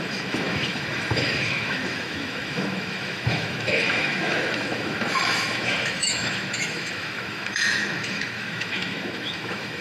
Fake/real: fake